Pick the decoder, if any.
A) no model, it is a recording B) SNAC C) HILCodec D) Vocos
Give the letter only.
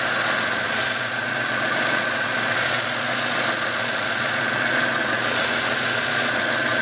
D